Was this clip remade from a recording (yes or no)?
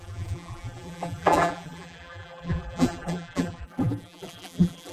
yes